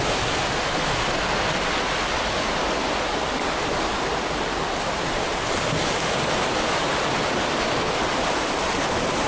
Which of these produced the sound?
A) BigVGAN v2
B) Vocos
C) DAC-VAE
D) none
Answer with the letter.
D